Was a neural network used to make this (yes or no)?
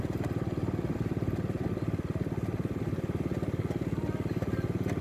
no